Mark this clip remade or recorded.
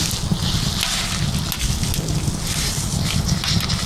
recorded